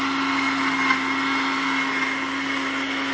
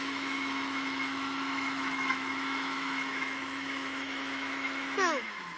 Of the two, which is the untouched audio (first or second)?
first